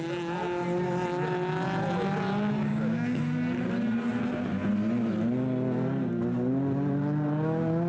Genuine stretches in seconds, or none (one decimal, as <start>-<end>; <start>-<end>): 0.0-2.7; 3.2-7.9